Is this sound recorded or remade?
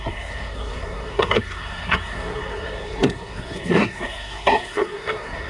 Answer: remade